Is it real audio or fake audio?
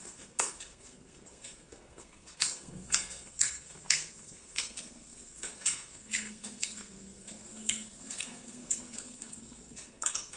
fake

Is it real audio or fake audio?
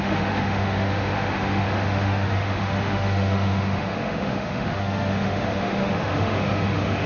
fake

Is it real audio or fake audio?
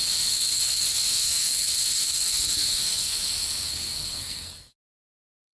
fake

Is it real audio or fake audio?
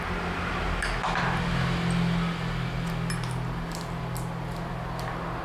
real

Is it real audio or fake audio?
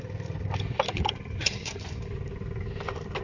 fake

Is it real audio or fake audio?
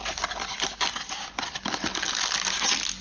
real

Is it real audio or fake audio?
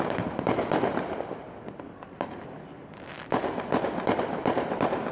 real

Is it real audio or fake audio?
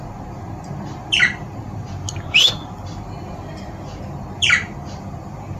real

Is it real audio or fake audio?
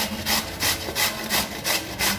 real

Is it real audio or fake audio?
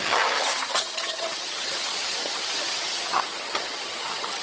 fake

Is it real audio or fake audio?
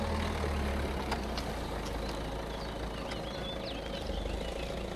real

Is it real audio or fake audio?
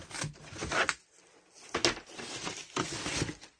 real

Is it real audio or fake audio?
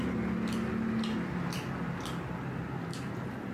real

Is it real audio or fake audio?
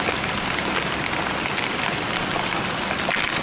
real